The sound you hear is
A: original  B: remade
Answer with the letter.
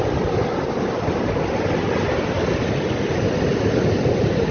A